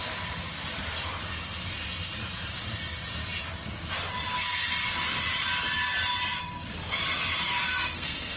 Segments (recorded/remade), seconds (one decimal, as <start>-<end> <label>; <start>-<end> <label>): 0.0-7.7 recorded; 7.7-8.4 remade